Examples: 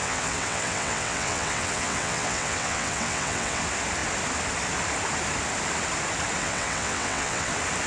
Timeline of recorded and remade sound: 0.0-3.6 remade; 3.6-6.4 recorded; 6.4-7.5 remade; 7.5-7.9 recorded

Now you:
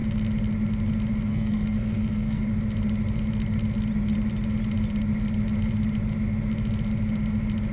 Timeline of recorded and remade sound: 0.0-1.3 recorded; 1.3-2.4 remade; 2.4-7.7 recorded

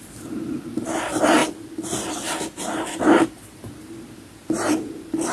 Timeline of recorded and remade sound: 0.0-5.3 recorded

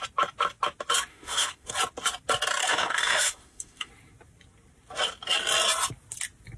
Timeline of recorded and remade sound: 0.0-1.1 recorded; 1.1-1.7 remade; 1.7-2.6 recorded; 2.6-3.9 remade; 3.9-6.6 recorded

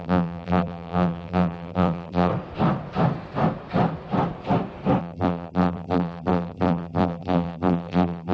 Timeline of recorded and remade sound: 0.0-2.3 remade; 2.3-5.0 recorded; 5.0-8.3 remade

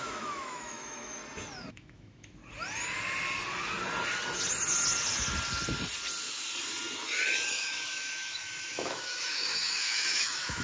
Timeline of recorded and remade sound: 0.0-1.2 remade; 1.2-1.7 recorded; 1.7-2.4 remade; 2.4-7.5 recorded; 7.5-10.6 remade